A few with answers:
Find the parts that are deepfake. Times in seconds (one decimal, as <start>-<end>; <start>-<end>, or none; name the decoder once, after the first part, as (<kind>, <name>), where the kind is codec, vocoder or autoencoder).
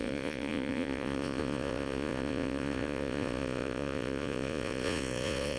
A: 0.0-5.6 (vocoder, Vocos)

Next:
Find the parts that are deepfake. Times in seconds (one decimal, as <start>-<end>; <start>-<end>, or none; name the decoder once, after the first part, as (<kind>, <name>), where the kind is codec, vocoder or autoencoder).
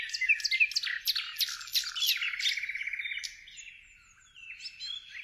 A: none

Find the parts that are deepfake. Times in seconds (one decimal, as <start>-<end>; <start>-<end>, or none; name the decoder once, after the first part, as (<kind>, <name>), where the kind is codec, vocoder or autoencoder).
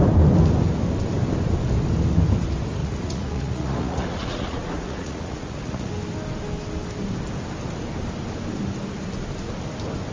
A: 2.8-5.9 (vocoder, Vocos)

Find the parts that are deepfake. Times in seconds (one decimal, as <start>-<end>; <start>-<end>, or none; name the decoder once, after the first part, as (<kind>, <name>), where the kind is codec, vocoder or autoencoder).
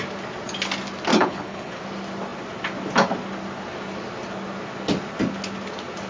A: 1.1-1.8 (codec, HILCodec)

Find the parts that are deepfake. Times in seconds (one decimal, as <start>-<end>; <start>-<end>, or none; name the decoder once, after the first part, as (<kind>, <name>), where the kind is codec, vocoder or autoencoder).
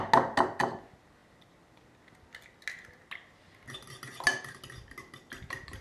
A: none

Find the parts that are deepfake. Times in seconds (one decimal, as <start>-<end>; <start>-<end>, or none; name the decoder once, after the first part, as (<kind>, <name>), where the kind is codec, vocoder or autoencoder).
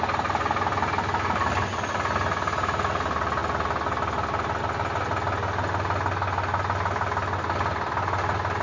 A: none